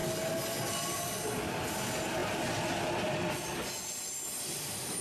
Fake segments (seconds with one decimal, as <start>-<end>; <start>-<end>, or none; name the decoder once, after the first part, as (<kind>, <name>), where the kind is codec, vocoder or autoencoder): none